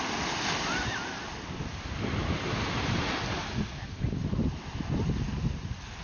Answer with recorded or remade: recorded